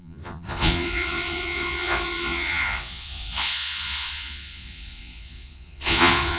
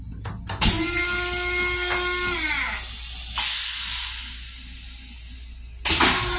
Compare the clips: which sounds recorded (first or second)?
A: second